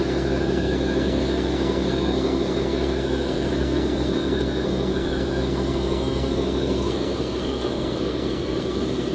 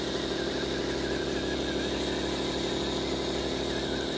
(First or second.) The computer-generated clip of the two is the first